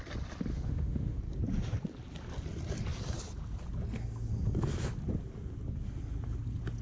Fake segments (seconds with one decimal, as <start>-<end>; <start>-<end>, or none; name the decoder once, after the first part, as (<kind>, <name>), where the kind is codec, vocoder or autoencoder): 0.5-1.2 (autoencoder, DAC-VAE)